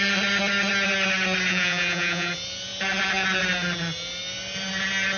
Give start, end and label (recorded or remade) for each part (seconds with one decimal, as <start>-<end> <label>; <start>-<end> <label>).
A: 0.0-1.5 recorded; 1.5-2.3 remade; 2.3-5.2 recorded

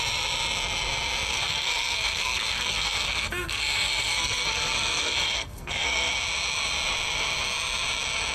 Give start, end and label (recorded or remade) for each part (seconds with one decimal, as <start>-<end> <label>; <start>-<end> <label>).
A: 0.0-1.3 recorded; 1.3-6.1 remade; 6.1-8.3 recorded

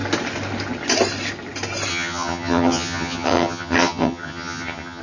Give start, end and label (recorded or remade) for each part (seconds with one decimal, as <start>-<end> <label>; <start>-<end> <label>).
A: 0.0-1.9 recorded; 1.9-5.0 remade

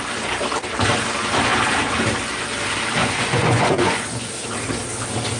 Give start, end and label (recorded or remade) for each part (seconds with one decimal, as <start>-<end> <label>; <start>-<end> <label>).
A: 0.0-3.0 recorded; 3.0-4.3 remade; 4.3-5.4 recorded

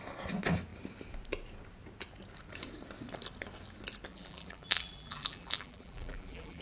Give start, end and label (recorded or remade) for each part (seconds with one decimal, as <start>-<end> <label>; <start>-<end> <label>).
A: 0.0-4.1 recorded; 4.1-6.6 remade

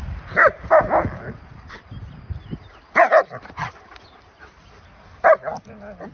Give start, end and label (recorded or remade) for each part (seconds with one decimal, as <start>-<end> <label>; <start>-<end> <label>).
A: 0.0-6.1 recorded

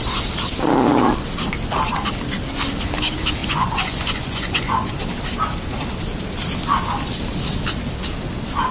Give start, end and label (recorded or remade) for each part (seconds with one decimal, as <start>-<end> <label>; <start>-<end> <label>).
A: 0.0-3.4 recorded; 3.4-5.0 remade; 5.0-8.7 recorded